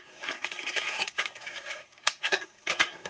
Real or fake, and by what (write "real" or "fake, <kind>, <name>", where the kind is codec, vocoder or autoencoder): fake, codec, SNAC